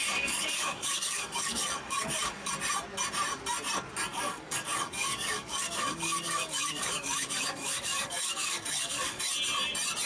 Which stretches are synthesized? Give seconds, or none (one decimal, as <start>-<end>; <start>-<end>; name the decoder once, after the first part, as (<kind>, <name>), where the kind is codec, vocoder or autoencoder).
0.0-2.5 (codec, DAC); 4.1-9.2